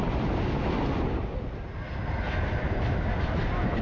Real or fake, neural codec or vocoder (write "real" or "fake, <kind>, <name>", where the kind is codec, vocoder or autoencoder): real